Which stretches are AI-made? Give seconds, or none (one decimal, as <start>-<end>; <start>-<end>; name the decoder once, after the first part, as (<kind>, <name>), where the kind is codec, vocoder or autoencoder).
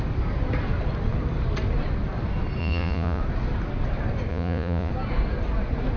2.6-3.2 (vocoder, Vocos); 4.3-4.9